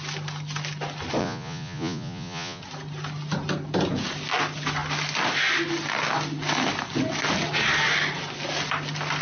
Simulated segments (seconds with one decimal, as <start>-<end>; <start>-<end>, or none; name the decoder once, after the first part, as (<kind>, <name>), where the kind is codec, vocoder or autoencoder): 1.2-2.6 (vocoder, Vocos)